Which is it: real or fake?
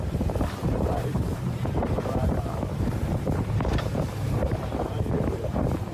fake